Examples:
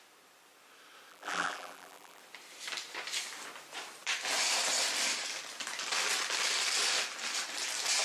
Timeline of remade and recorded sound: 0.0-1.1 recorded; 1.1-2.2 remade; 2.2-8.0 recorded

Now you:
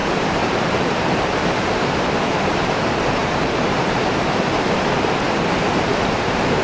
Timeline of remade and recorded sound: 0.0-6.6 remade